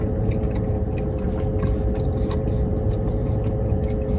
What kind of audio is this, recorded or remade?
recorded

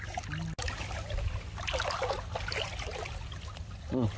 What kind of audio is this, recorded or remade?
recorded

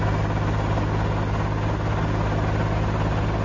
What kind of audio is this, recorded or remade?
recorded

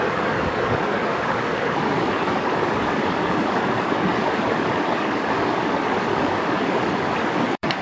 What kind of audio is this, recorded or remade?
remade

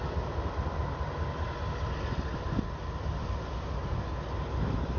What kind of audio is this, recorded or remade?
recorded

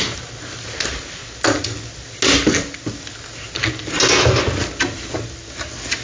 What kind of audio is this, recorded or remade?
recorded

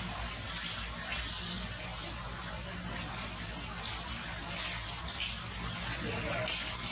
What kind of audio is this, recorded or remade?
recorded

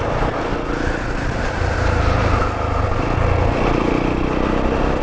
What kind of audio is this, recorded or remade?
recorded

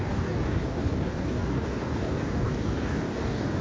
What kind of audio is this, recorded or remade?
remade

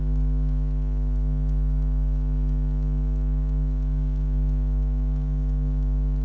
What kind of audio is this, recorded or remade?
remade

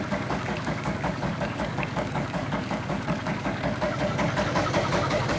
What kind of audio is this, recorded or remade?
remade